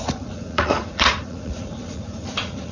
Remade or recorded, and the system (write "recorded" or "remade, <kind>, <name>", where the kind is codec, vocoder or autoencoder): remade, vocoder, Vocos